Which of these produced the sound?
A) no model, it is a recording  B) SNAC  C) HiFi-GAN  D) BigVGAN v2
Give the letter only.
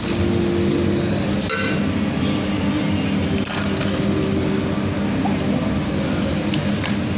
A